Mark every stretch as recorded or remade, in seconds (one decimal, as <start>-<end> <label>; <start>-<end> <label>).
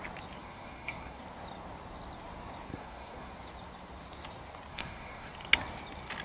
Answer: 0.0-0.4 recorded; 0.4-1.2 remade; 1.2-2.7 recorded; 2.7-3.3 remade; 3.3-4.7 recorded; 4.7-5.3 remade; 5.3-6.2 recorded